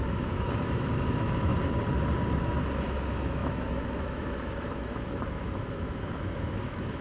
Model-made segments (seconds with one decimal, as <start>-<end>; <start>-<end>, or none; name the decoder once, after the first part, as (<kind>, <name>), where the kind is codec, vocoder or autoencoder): 0.0-1.5 (autoencoder, DAC-VAE); 2.4-7.0

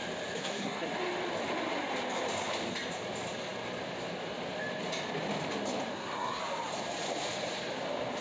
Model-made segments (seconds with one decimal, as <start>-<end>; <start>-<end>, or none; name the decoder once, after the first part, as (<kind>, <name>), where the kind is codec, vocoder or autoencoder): 0.4-0.9 (codec, SNAC); 5.9-6.4

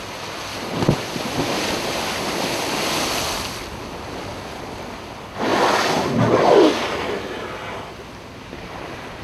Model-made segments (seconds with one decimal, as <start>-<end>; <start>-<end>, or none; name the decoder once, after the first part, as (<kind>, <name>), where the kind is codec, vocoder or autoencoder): none

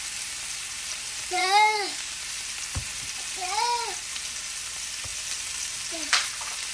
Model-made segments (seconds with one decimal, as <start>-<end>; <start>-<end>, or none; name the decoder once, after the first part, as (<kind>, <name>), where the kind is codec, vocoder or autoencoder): 1.4-2.2 (codec, DAC)

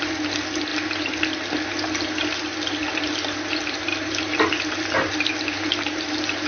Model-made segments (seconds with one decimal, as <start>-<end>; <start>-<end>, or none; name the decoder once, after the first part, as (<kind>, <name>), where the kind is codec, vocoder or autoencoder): 3.9-5.3 (vocoder, BigVGAN v2)

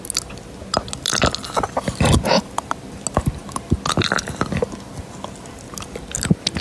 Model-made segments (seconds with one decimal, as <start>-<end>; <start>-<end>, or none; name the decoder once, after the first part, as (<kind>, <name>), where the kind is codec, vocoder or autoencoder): none